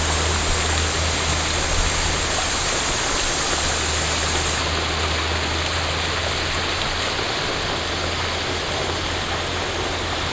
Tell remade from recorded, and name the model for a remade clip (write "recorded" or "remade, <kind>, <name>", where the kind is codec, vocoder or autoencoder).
recorded